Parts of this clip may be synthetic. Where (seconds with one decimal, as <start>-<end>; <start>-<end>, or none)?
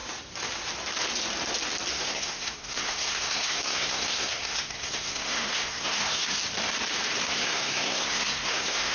1.9-6.4; 7.2-8.9